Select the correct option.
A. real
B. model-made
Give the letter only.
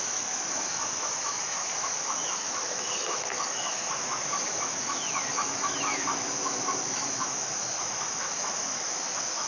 B